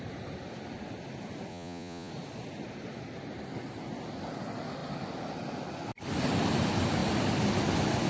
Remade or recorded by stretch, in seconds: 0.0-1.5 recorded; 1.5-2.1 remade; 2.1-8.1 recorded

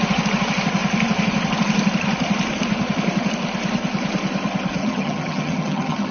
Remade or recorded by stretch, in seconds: 0.0-4.8 recorded; 4.8-6.1 remade

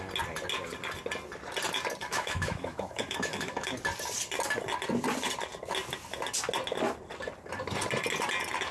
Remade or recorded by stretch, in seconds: 0.0-2.0 recorded; 2.0-3.7 remade; 3.7-8.7 recorded

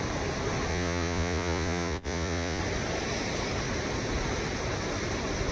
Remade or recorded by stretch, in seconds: 0.0-0.7 recorded; 0.7-2.6 remade; 2.6-5.5 recorded

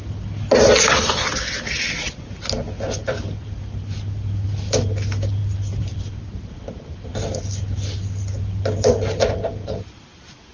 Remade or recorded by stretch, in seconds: 0.0-10.5 recorded

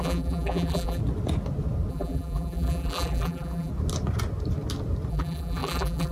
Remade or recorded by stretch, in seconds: 0.0-1.0 remade; 1.0-1.9 recorded; 1.9-3.7 remade; 3.7-5.1 recorded; 5.1-6.1 remade